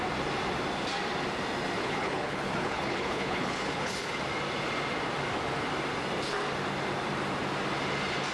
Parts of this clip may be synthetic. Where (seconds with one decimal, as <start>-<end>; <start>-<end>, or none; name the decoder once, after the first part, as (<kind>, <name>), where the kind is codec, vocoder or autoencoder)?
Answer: 1.8-4.2 (codec, HILCodec)